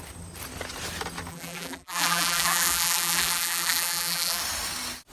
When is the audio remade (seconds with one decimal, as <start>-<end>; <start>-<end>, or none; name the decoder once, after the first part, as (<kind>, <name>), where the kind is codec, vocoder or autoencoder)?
1.3-4.4 (vocoder, BigVGAN v2)